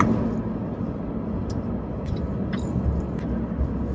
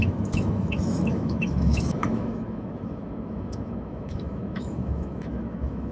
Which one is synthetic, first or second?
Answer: second